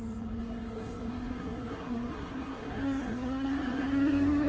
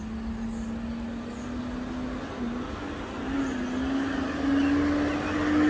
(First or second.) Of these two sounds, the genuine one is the second